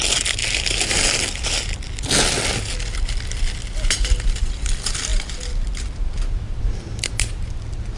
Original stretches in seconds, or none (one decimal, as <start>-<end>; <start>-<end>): 0.0-8.0